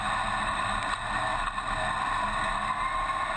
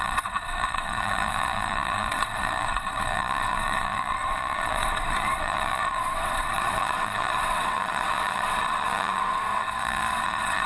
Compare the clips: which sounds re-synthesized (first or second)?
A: second